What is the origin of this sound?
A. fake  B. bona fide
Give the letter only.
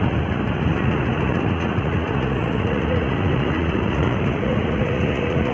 A